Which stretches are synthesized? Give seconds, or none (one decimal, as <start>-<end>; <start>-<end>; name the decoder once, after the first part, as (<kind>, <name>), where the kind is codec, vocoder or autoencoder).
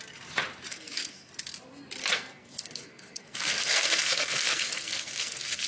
0.7-1.3 (codec, SNAC); 2.0-5.7